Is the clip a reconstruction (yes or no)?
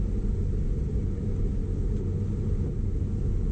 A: no